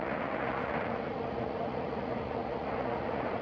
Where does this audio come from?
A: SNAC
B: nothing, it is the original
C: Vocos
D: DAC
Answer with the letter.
C